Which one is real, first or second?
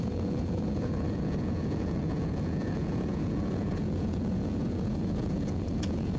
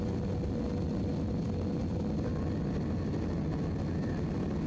second